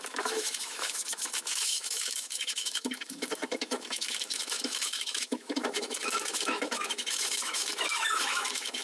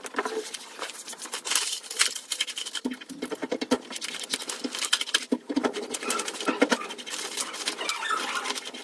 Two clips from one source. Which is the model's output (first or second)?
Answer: first